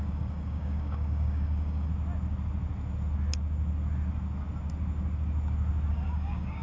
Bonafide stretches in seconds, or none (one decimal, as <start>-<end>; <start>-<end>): 1.9-5.9